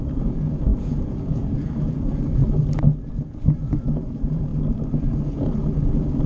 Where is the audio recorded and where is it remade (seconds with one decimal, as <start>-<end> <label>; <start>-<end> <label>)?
0.0-2.4 remade; 2.4-3.1 recorded; 3.1-4.5 remade; 4.5-5.0 recorded; 5.0-5.6 remade; 5.6-6.3 recorded